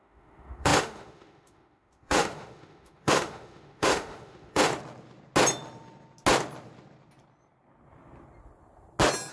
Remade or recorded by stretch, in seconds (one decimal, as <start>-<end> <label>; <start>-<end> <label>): 0.0-4.7 remade; 4.7-9.3 recorded